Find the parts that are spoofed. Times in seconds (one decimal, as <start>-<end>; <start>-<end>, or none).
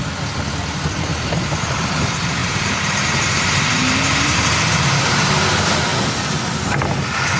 1.1-2.0; 2.4-5.4